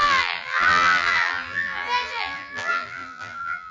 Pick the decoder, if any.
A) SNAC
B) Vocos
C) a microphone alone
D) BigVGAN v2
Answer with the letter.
D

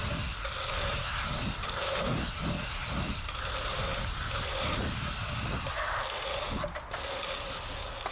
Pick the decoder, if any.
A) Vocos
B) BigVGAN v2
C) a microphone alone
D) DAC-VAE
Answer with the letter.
C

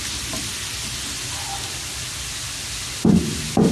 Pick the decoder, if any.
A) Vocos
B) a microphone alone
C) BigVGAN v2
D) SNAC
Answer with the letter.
B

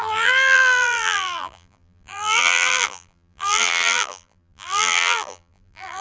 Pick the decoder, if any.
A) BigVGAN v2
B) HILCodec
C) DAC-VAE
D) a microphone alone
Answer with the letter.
A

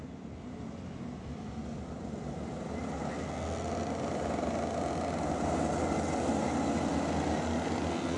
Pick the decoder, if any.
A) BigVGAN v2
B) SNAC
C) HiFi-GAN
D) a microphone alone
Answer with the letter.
D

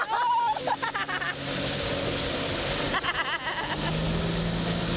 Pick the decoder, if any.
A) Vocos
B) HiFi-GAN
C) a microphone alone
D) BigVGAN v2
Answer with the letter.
C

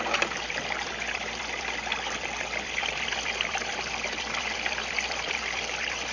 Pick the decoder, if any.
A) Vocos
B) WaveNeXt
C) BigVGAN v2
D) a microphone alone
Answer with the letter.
C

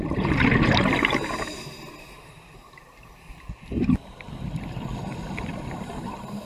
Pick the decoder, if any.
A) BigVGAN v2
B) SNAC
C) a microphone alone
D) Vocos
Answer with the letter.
C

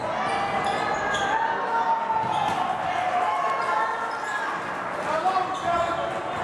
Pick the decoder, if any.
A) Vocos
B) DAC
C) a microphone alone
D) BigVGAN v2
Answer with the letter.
C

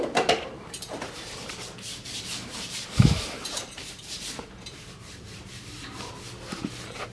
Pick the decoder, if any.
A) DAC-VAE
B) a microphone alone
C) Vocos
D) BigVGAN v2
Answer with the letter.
D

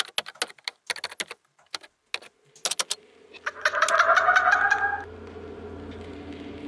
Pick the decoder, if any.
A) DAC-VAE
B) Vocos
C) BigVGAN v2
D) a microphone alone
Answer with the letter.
D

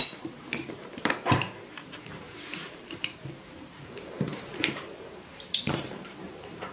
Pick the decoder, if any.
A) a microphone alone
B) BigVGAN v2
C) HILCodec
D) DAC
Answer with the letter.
B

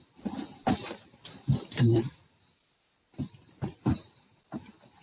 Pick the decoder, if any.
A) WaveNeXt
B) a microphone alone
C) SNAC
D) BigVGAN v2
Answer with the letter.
B